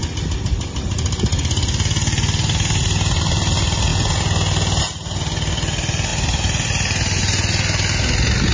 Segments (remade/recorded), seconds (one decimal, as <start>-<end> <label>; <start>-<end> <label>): 0.0-8.5 recorded